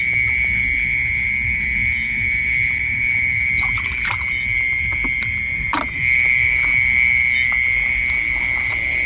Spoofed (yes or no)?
no